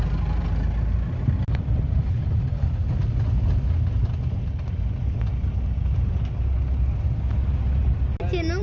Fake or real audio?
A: real